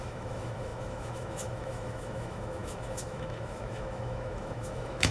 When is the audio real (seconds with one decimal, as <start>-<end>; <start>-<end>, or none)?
none